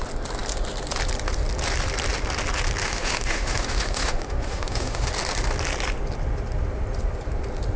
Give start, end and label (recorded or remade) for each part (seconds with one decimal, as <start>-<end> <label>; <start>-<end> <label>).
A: 0.0-2.8 recorded; 2.8-5.1 remade; 5.1-7.8 recorded